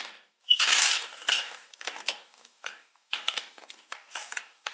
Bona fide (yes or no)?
no